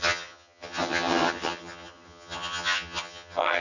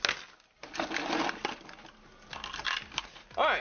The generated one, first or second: first